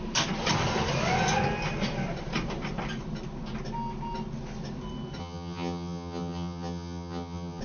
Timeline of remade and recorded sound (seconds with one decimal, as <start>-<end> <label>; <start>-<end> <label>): 0.0-5.2 recorded; 5.2-7.6 remade